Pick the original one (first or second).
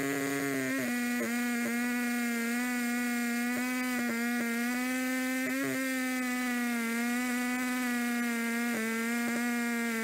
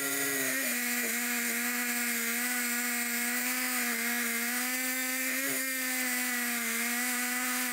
first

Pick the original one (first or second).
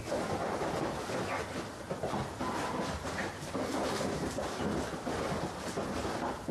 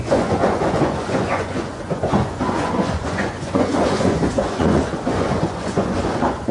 first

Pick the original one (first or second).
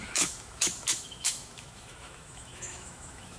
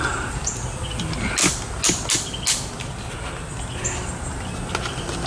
second